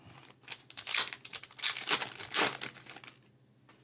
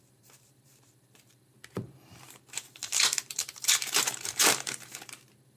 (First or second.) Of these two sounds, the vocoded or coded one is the second